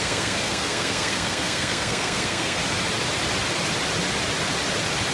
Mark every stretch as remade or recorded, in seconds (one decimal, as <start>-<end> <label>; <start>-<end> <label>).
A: 0.0-2.6 remade; 2.6-5.1 recorded